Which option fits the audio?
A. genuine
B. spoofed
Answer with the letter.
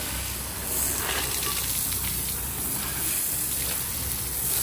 A